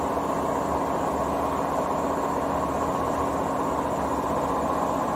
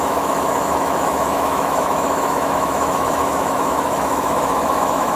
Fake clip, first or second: second